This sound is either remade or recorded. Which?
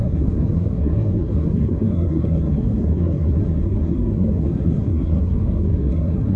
remade